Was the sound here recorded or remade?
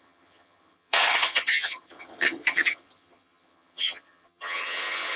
remade